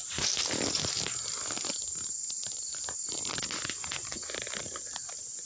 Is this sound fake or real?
real